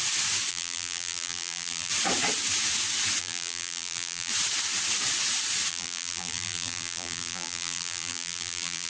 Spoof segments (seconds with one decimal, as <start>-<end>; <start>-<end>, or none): 0.5-1.9; 3.2-4.3; 5.7-8.9